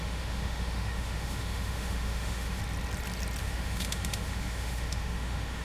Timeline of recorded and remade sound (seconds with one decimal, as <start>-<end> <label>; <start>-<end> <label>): 0.0-2.6 remade; 2.6-3.4 recorded; 3.4-5.6 remade